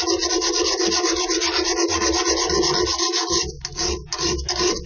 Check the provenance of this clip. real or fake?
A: real